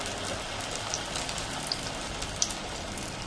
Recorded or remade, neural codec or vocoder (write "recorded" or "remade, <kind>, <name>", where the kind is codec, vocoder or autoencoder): recorded